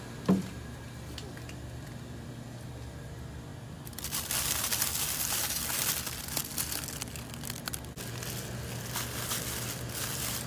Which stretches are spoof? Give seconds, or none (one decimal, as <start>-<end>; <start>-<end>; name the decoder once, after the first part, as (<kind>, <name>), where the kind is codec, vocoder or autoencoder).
none